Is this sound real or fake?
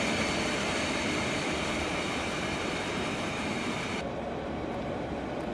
real